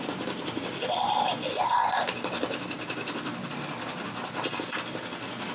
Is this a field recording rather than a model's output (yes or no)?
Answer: yes